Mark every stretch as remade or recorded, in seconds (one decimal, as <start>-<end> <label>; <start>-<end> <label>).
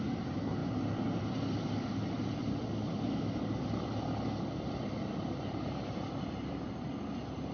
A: 0.0-7.5 recorded